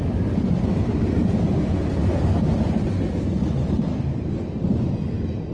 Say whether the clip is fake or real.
real